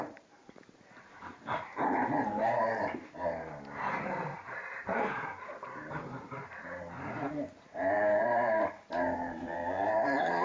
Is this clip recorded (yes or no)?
no